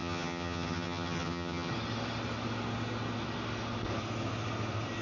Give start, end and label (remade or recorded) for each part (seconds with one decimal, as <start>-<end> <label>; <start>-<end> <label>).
0.0-1.7 remade; 1.7-5.0 recorded